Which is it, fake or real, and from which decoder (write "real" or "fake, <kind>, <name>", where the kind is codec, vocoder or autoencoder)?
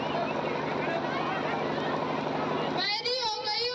real